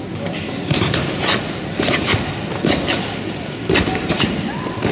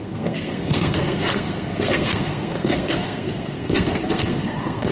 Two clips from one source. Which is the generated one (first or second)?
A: second